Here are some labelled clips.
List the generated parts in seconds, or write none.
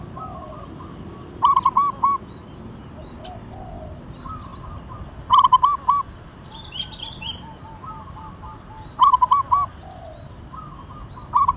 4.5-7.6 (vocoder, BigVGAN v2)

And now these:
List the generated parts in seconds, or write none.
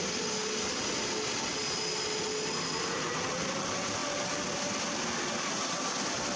none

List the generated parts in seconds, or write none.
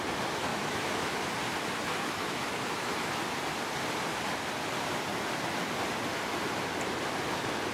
0.5-1.3 (autoencoder, DAC-VAE); 1.9-3.1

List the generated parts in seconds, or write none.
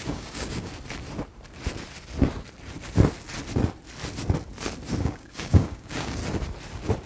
0.0-0.7 (codec, DAC); 5.0-6.2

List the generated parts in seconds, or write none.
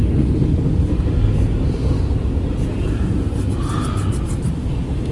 none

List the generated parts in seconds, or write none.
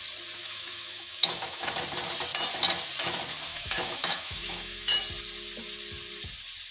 0.4-1.7 (autoencoder, DAC-VAE); 3.5-5.0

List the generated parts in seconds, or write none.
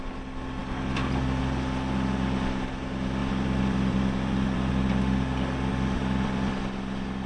0.6-1.4 (vocoder, BigVGAN v2); 3.2-4.7; 5.7-6.6